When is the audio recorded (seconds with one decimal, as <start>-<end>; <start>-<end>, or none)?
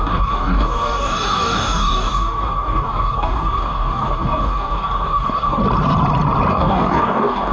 5.6-6.5